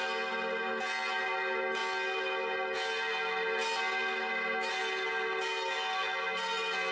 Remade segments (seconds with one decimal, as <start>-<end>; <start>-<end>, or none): none